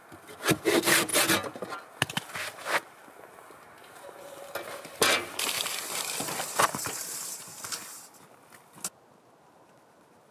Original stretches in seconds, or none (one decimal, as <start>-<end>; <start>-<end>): 1.1-2.1; 3.0-5.3; 7.5-9.5